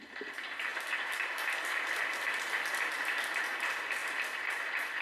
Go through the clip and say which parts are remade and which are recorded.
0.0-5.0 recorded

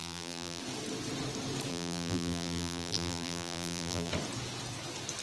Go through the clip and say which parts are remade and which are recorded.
0.0-0.6 remade; 0.6-1.7 recorded; 1.7-4.1 remade; 4.1-5.2 recorded

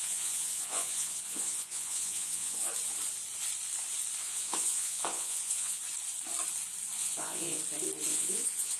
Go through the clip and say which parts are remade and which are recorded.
0.0-2.7 remade; 2.7-4.2 recorded; 4.2-5.8 remade; 5.8-7.0 recorded; 7.0-7.6 remade; 7.6-8.1 recorded; 8.1-8.8 remade

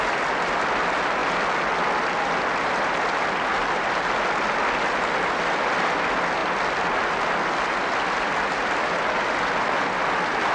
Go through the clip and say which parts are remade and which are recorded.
0.0-10.5 recorded

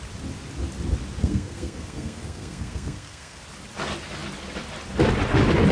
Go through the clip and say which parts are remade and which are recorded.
0.0-1.2 recorded; 1.2-3.4 remade; 3.4-5.7 recorded

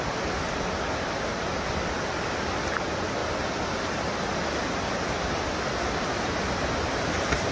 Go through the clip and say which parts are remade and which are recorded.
0.0-7.5 recorded

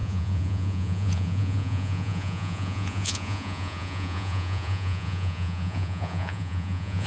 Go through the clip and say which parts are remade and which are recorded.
0.0-7.1 remade

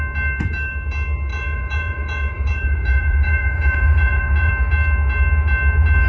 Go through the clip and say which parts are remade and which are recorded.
0.0-1.3 recorded; 1.3-4.5 remade; 4.5-6.1 recorded